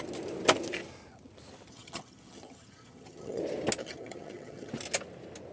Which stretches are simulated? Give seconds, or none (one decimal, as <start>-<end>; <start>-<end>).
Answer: 1.7-3.4; 3.8-4.7